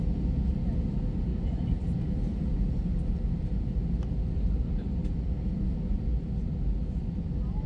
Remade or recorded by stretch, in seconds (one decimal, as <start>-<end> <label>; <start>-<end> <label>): 0.0-1.3 recorded; 1.3-4.6 remade; 4.6-7.7 recorded